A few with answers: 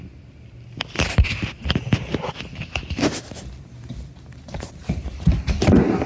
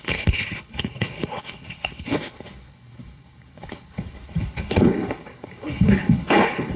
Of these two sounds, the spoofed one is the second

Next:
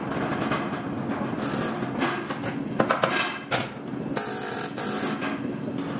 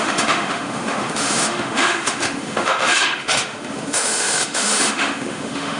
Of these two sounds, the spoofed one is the second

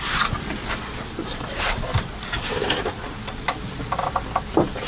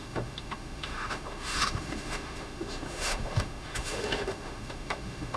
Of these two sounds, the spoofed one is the second